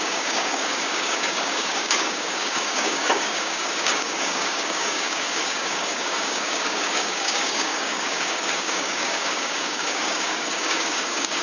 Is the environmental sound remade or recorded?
remade